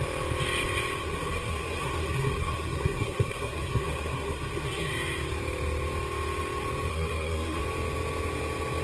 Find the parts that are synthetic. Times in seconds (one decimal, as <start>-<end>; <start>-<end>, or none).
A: 1.0-4.9; 6.9-7.6